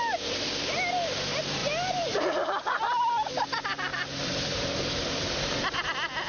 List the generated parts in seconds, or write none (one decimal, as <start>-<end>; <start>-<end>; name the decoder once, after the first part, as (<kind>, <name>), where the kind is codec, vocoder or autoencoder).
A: 1.6-2.8 (vocoder, BigVGAN v2); 3.9-5.6